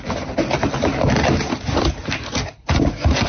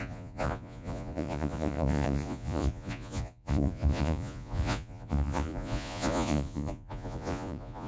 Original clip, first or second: first